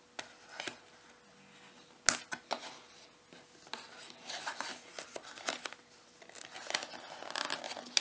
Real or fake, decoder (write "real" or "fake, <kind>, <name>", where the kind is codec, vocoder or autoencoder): real